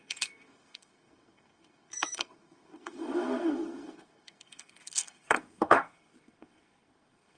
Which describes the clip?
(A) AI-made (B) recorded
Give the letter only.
A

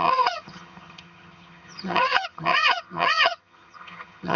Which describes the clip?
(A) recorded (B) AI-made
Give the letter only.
B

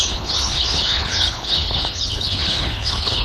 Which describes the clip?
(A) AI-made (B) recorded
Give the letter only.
A